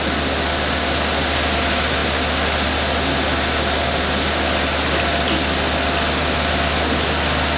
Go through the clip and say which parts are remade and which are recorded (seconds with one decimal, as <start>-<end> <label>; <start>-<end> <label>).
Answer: 0.0-7.6 recorded